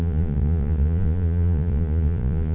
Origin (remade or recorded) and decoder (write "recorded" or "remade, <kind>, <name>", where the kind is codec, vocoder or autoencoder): remade, vocoder, Vocos